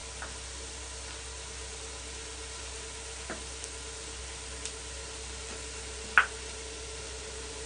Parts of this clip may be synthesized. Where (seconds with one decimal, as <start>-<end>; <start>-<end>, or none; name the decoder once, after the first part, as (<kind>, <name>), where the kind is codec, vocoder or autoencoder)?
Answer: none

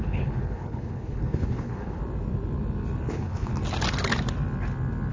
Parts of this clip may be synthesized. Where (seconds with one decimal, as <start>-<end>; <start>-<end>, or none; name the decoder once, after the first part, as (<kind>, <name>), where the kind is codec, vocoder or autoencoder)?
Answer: 0.0-2.0 (codec, HILCodec); 3.1-3.5

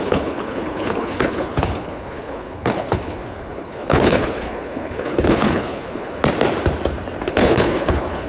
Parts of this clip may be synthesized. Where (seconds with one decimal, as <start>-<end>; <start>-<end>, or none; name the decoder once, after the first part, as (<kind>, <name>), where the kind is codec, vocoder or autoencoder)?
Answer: 0.0-6.2 (codec, HILCodec); 7.2-8.3

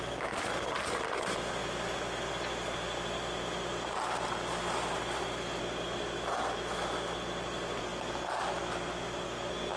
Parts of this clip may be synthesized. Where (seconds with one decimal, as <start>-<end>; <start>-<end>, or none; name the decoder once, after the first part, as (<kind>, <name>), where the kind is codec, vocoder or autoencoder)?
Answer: none

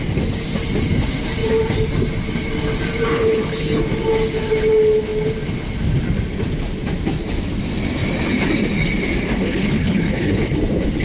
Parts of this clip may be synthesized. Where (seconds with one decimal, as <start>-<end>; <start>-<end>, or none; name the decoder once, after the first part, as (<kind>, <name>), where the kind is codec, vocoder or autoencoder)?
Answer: 3.1-3.8 (codec, HILCodec); 9.3-10.6